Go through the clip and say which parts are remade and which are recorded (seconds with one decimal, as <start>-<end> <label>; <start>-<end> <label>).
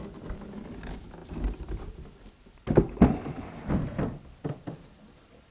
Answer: 0.0-5.5 recorded